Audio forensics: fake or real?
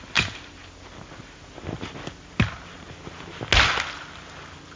real